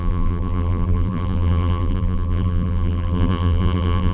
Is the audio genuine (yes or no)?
no